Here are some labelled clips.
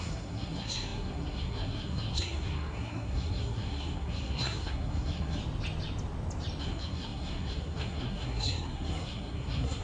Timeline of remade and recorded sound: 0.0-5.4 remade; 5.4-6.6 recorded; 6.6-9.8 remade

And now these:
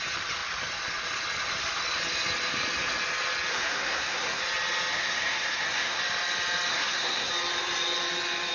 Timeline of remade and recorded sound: 0.0-3.5 recorded; 3.5-4.4 remade; 4.4-4.9 recorded; 4.9-6.0 remade; 6.0-6.7 recorded; 6.7-7.3 remade; 7.3-8.5 recorded

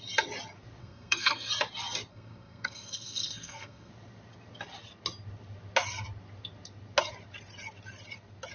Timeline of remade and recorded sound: 0.0-0.8 recorded; 0.8-1.5 remade; 1.5-2.1 recorded; 2.1-3.9 remade; 3.9-8.5 recorded

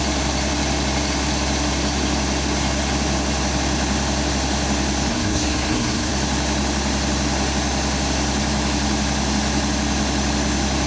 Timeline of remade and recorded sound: 0.0-5.1 recorded; 5.1-6.1 remade; 6.1-10.9 recorded

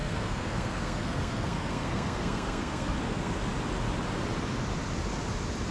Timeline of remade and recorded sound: 0.0-3.3 remade; 3.3-5.7 recorded

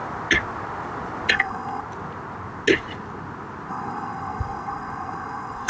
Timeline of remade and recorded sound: 0.0-1.3 recorded; 1.3-1.8 remade; 1.8-3.7 recorded; 3.7-5.7 remade